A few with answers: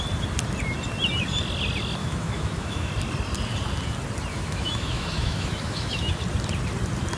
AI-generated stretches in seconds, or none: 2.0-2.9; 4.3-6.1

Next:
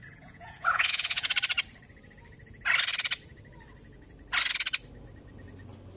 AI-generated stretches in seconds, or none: 0.0-1.3

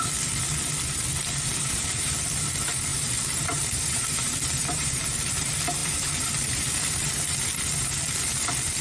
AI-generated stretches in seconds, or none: 1.5-2.2; 2.9-5.3; 5.8-7.2

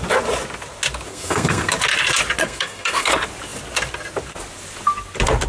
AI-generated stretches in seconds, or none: 1.1-1.7; 2.4-3.1

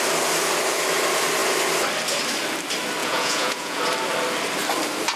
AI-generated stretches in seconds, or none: 3.0-3.8

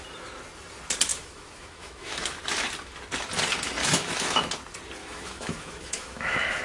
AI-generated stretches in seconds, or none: 1.1-2.4; 3.8-4.5; 5.0-6.6